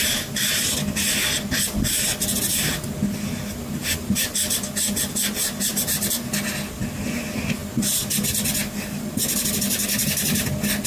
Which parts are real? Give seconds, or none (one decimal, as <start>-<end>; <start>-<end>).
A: 0.0-10.9